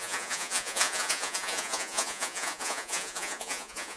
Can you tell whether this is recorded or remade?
remade